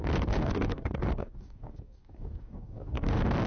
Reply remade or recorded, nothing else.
remade